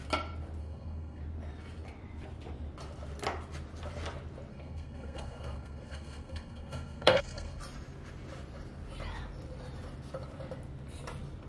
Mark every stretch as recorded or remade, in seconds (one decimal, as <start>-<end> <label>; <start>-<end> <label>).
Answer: 0.0-0.6 recorded; 0.6-1.2 remade; 1.2-4.5 recorded; 4.5-7.6 remade; 7.6-11.5 recorded